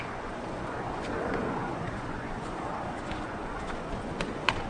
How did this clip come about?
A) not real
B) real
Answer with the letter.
A